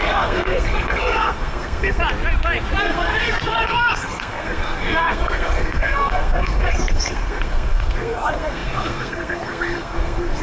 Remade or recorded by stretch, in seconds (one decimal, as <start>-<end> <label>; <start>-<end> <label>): 0.0-2.0 remade; 2.0-2.8 recorded; 2.8-10.4 remade